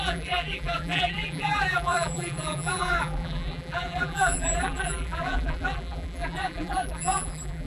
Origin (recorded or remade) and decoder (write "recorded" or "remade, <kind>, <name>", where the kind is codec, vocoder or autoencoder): remade, vocoder, BigVGAN v2